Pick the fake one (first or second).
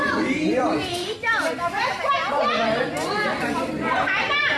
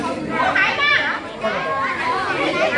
first